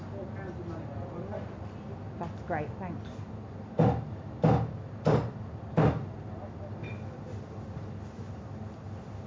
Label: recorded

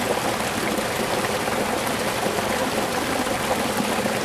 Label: recorded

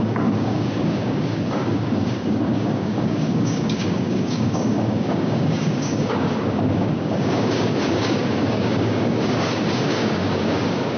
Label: remade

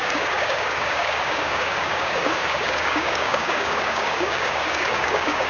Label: remade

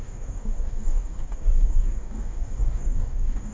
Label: remade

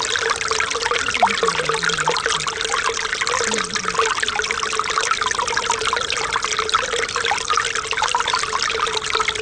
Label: recorded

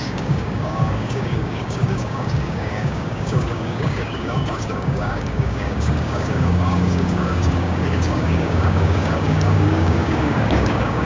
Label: remade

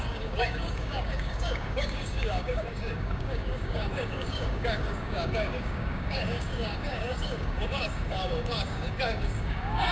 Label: remade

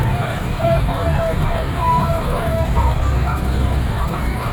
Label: remade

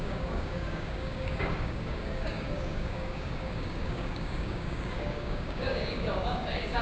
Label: remade